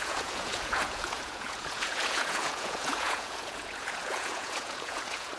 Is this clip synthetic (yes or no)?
yes